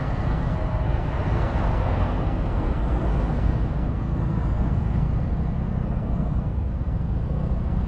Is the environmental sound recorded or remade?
remade